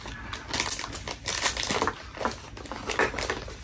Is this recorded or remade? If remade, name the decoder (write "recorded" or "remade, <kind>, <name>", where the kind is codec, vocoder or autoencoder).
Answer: recorded